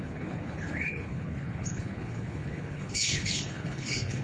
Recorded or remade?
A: remade